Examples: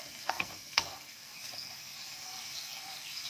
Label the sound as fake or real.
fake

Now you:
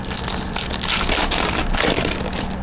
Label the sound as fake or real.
real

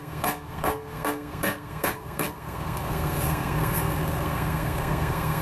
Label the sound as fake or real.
fake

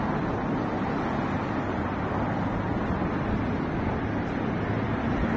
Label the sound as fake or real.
real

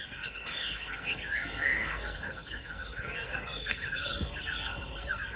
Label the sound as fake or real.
fake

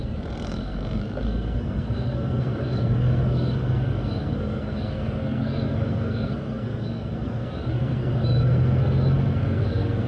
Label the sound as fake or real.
fake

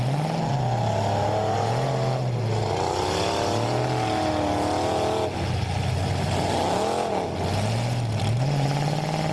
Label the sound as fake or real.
real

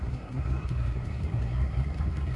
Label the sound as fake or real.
fake